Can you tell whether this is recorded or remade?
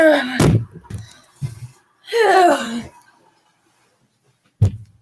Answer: recorded